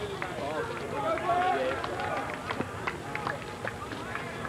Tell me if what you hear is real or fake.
real